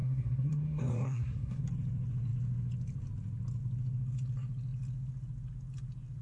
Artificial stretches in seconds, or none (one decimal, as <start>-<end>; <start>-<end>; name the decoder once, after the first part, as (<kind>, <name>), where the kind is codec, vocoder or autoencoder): 0.0-1.6 (codec, SNAC)